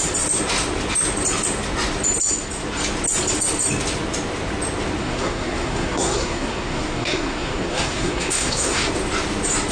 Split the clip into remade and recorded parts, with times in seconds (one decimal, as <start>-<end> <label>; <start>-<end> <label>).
0.0-5.0 recorded; 5.0-8.9 remade; 8.9-9.7 recorded